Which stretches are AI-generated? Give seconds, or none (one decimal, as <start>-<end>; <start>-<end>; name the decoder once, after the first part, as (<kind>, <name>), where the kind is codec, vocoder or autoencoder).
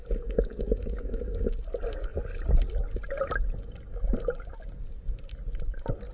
0.0-1.5 (codec, DAC)